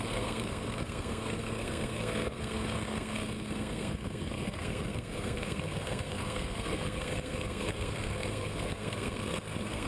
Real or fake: fake